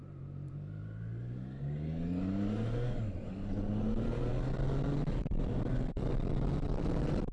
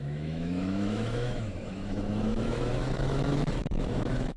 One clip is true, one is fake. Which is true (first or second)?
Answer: first